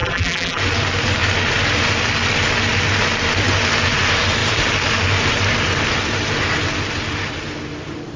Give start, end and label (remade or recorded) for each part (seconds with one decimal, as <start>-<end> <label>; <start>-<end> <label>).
0.0-0.6 remade; 0.6-8.2 recorded